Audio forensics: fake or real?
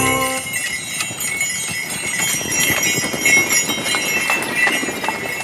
real